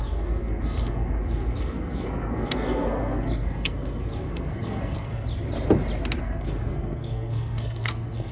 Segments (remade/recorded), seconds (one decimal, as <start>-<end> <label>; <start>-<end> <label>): 0.0-5.1 remade; 5.1-6.2 recorded; 6.2-8.3 remade